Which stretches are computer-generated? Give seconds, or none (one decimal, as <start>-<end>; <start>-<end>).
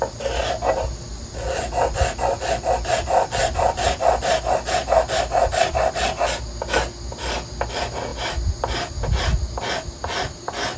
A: none